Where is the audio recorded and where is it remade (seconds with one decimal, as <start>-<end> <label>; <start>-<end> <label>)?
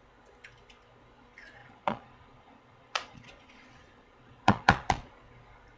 0.0-1.6 recorded; 1.6-5.1 remade; 5.1-5.8 recorded